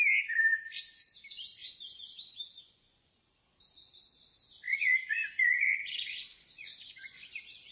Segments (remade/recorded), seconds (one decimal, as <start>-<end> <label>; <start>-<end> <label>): 0.0-1.6 recorded; 1.6-3.1 remade; 3.1-4.7 recorded; 4.7-7.2 remade; 7.2-7.7 recorded

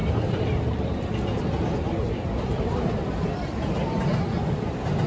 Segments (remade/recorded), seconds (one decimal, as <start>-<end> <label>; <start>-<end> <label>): 0.0-5.1 recorded